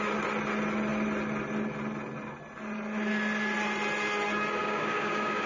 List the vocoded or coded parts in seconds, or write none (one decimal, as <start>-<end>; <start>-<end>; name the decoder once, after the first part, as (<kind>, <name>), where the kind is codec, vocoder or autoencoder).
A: 4.6-5.5 (codec, DAC)